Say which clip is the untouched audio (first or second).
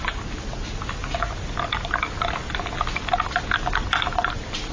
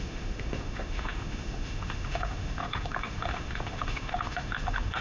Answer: first